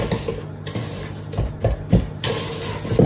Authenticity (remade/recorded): recorded